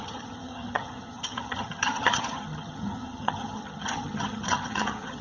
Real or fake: fake